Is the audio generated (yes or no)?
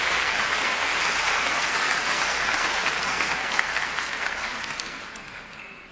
yes